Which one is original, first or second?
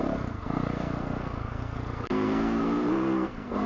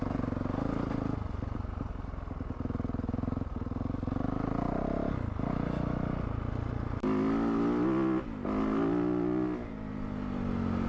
second